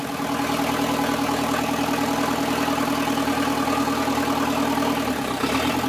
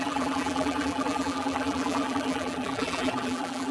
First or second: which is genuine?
first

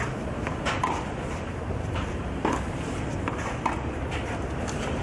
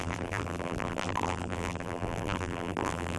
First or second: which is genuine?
first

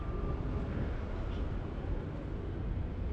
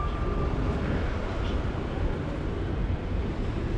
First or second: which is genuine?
first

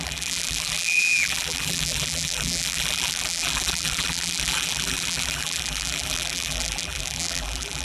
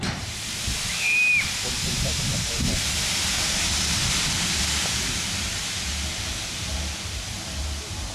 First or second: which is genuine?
second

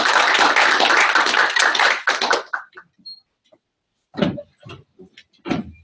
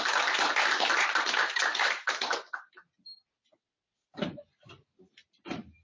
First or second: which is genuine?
first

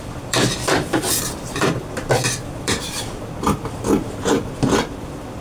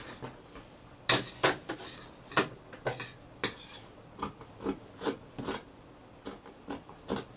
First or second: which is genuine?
second